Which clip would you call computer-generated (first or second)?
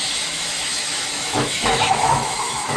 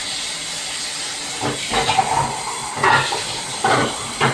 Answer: first